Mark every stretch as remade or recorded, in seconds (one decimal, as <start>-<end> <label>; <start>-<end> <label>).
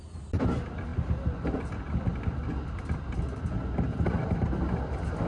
0.0-5.3 recorded